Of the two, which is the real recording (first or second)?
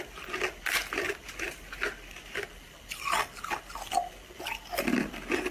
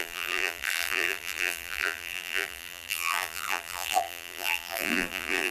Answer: first